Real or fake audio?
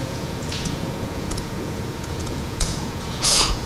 fake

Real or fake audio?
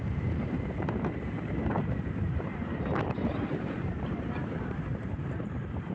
fake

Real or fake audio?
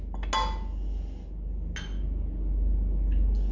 real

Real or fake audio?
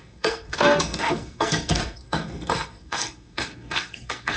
fake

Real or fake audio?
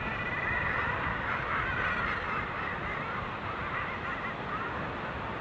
fake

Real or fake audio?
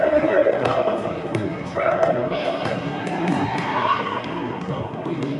fake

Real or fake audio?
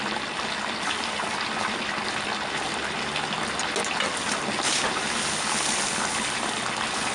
real